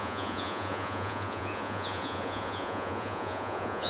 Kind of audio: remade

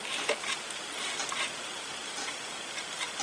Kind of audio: recorded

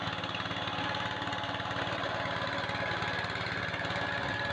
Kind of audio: recorded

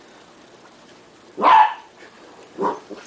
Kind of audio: remade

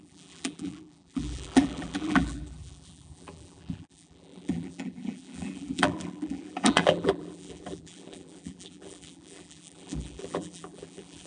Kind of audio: remade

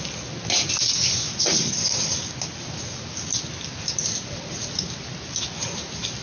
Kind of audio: recorded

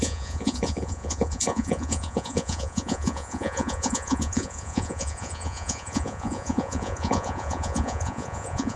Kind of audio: remade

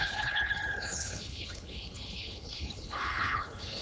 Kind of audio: remade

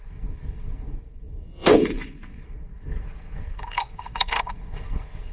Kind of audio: remade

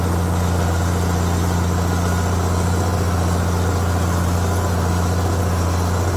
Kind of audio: recorded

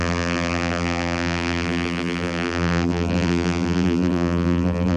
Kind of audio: remade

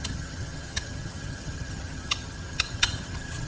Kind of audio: remade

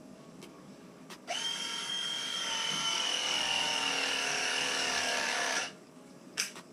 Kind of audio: remade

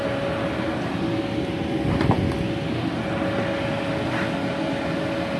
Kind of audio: recorded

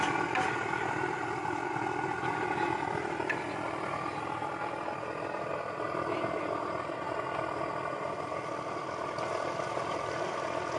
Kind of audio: recorded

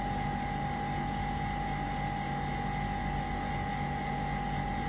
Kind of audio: recorded